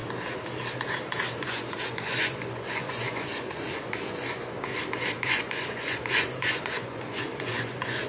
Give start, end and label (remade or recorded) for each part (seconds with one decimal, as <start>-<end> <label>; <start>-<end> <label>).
0.0-1.4 recorded; 1.4-4.7 remade; 4.7-5.2 recorded; 5.2-8.1 remade